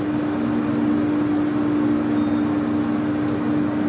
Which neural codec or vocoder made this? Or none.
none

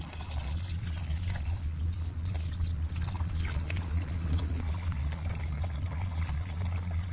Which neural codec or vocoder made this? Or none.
vocoder, Vocos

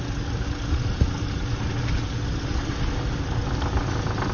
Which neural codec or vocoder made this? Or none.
none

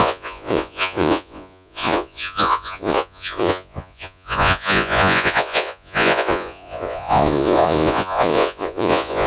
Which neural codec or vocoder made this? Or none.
vocoder, Vocos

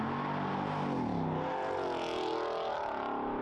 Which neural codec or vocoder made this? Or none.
none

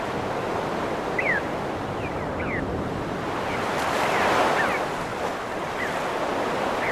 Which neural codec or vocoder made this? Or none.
none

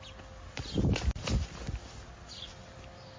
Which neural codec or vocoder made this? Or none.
none